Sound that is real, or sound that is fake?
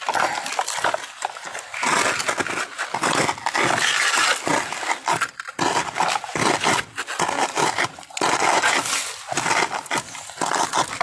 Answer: real